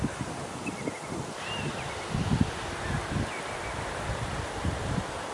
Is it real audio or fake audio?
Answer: real